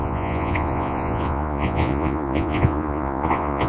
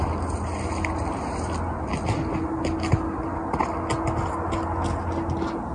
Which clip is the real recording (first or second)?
second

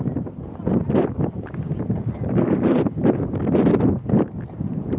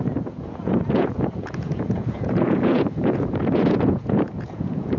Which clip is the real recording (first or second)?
first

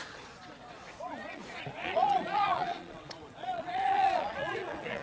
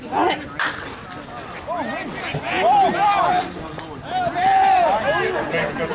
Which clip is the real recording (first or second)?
second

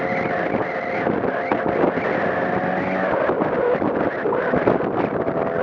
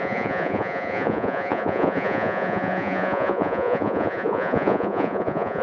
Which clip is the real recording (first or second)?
first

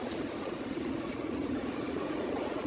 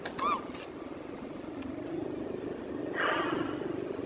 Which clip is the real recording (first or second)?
second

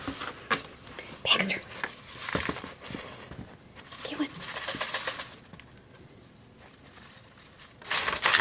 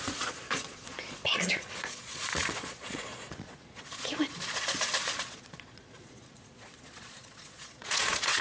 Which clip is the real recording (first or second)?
first